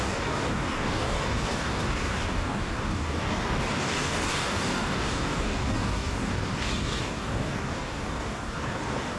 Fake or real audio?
fake